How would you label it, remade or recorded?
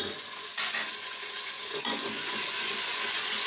remade